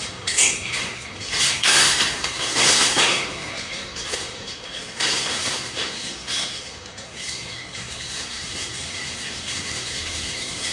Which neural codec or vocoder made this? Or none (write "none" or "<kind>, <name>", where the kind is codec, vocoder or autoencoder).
codec, SNAC